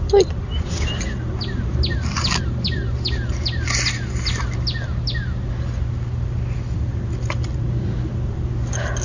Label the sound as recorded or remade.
recorded